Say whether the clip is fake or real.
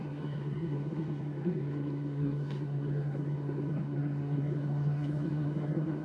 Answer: fake